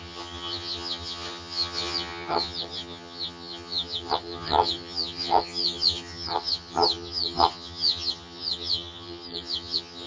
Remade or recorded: remade